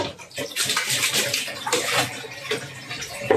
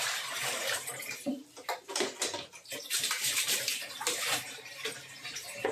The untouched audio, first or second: first